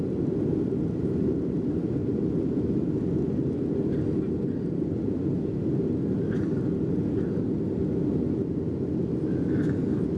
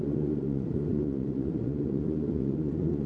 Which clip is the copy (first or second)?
second